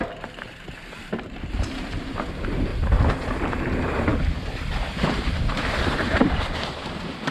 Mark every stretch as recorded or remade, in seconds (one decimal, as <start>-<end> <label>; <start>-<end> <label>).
0.0-2.7 remade; 2.7-3.5 recorded; 3.5-7.3 remade